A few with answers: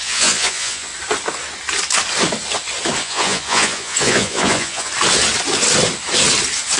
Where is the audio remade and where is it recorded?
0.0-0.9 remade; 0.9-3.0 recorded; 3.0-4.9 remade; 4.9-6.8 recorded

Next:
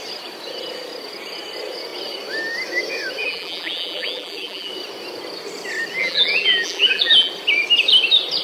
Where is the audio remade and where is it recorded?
0.0-3.2 recorded; 3.2-4.7 remade; 4.7-6.0 recorded; 6.0-7.3 remade; 7.3-8.4 recorded

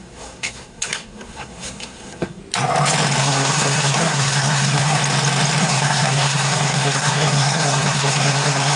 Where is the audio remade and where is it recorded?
0.0-2.4 remade; 2.4-3.2 recorded; 3.2-5.0 remade; 5.0-5.6 recorded; 5.6-8.8 remade

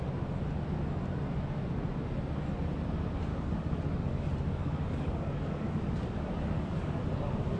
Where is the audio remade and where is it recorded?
0.0-3.3 recorded; 3.3-7.0 remade; 7.0-7.6 recorded

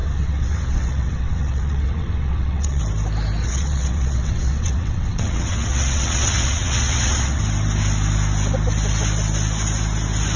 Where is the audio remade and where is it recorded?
0.0-2.8 remade; 2.8-3.4 recorded; 3.4-7.4 remade; 7.4-10.4 recorded

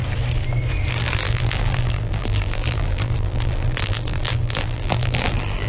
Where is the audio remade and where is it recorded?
0.0-0.9 recorded; 0.9-5.7 remade